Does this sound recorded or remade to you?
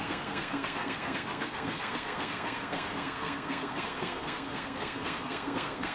remade